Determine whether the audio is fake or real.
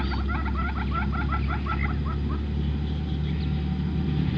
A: real